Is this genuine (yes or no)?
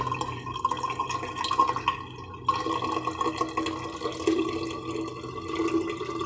yes